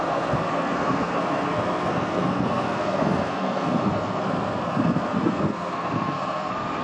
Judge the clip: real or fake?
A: fake